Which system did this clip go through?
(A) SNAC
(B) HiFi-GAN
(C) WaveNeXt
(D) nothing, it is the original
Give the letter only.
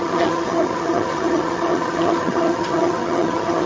B